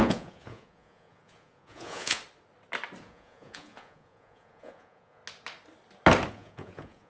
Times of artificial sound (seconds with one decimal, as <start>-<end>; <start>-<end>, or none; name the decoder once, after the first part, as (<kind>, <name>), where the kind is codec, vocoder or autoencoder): 0.0-2.2 (vocoder, Vocos); 3.0-5.2; 6.3-7.1